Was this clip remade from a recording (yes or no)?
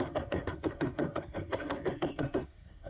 yes